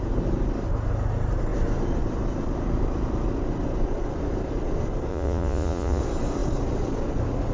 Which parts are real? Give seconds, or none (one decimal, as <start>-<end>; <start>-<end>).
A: 0.0-5.1; 6.0-7.5